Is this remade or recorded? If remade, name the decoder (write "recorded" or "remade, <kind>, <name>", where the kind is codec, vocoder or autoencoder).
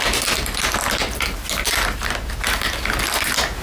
recorded